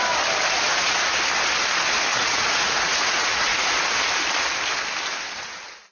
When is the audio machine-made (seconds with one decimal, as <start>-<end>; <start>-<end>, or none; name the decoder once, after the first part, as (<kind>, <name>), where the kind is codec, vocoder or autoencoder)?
0.7-1.2 (vocoder, Vocos); 2.1-3.8